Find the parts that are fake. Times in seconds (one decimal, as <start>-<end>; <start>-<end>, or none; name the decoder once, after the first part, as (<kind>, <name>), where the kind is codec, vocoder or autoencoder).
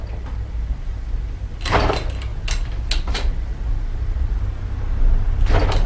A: none